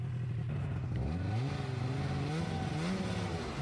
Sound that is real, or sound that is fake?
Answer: real